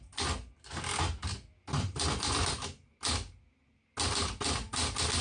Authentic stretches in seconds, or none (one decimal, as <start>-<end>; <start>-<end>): 0.0-5.2